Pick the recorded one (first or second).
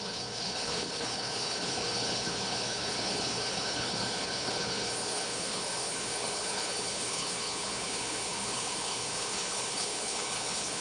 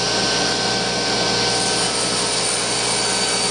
second